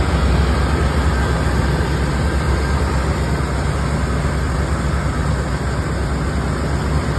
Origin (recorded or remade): recorded